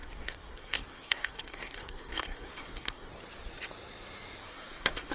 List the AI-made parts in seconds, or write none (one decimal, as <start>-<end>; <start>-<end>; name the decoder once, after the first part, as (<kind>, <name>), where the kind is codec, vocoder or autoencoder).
0.0-3.1 (codec, SNAC); 4.4-5.1